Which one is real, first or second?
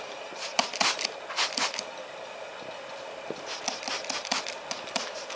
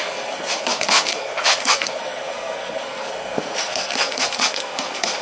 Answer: first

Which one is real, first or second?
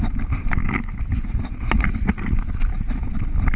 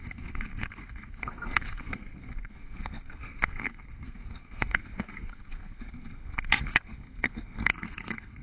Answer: first